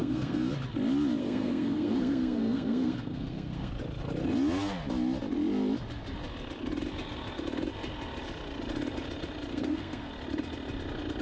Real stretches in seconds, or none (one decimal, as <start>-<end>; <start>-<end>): 0.5-1.2; 3.7-9.5; 10.1-11.2